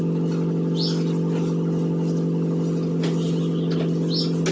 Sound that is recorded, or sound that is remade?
recorded